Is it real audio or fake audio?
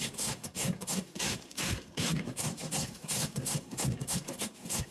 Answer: fake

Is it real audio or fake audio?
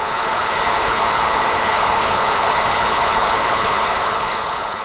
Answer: fake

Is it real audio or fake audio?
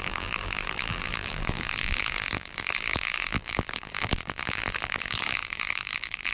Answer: fake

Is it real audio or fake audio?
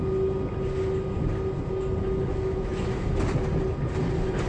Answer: real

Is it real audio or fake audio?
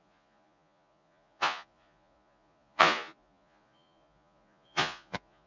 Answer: fake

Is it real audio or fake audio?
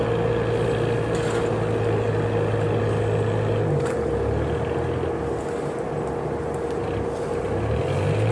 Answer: real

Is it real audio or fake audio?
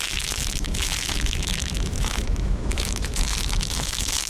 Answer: fake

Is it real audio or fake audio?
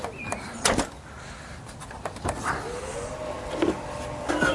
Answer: real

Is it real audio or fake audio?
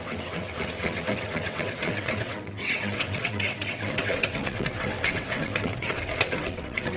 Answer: fake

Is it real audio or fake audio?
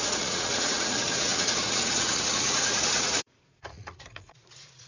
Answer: fake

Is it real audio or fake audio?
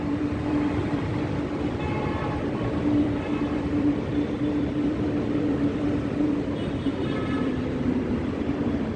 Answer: fake